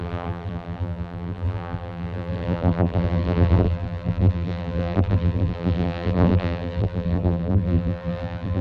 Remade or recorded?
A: remade